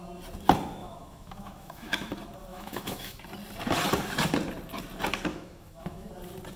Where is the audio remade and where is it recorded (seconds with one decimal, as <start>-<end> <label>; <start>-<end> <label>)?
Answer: 0.0-0.8 recorded; 0.8-2.1 remade; 2.1-2.5 recorded; 2.5-3.2 remade; 3.2-5.3 recorded; 5.3-6.1 remade; 6.1-6.6 recorded

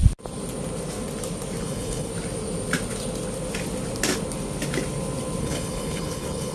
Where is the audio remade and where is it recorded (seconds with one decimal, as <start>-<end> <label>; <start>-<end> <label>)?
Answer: 0.0-1.6 recorded; 1.6-2.1 remade; 2.1-5.4 recorded; 5.4-6.5 remade

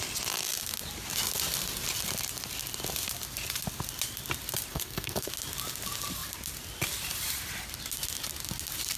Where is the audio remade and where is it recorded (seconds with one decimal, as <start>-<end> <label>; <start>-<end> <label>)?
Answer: 0.0-4.7 recorded; 4.7-5.3 remade; 5.3-9.0 recorded

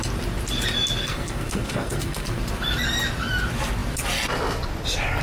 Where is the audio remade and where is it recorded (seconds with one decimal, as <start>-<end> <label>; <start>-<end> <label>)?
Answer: 0.0-1.0 recorded; 1.0-2.4 remade; 2.4-5.2 recorded

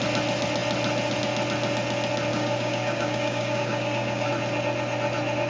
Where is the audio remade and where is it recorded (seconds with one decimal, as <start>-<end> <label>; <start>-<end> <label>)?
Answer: 0.0-2.3 recorded; 2.3-4.3 remade; 4.3-5.5 recorded

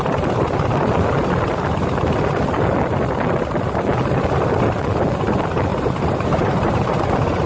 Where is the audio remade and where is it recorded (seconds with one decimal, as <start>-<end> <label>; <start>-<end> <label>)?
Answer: 0.0-5.7 recorded; 5.7-7.0 remade; 7.0-7.5 recorded

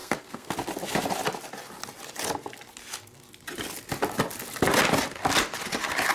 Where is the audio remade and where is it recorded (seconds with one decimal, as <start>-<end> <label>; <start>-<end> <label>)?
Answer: 0.0-0.5 remade; 0.5-6.1 recorded

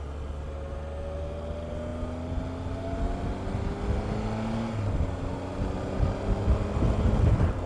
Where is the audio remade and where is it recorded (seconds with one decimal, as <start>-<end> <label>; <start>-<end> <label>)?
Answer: 0.0-7.7 recorded